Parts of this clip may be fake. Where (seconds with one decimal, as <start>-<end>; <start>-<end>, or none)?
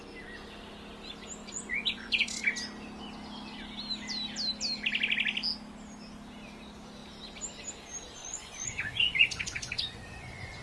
1.4-2.4; 8.2-10.6